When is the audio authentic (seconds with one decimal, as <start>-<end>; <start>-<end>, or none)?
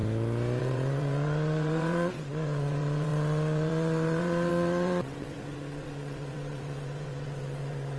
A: 0.0-0.6